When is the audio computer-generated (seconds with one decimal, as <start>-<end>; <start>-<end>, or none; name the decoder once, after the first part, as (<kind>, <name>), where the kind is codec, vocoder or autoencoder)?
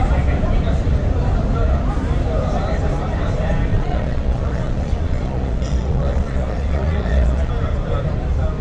3.7-7.5 (vocoder, Vocos)